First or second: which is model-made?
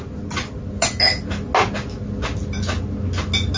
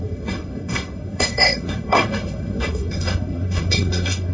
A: second